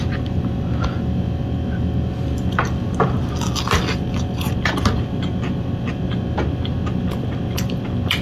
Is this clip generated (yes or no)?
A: no